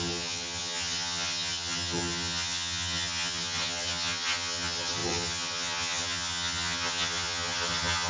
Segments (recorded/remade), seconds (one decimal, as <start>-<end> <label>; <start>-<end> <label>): 0.0-8.1 remade